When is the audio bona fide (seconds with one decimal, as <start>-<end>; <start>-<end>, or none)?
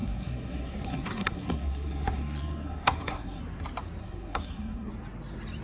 3.4-4.0; 4.9-5.6